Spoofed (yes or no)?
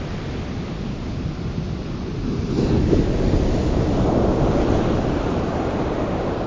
no